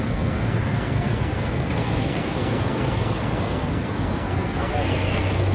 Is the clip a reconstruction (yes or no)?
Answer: yes